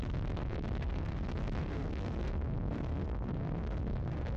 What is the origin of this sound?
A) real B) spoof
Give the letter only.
B